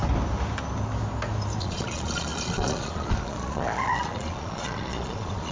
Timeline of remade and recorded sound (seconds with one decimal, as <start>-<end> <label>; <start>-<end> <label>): 0.0-1.6 recorded; 1.6-5.5 remade